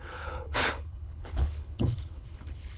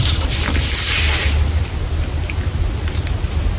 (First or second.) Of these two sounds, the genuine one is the second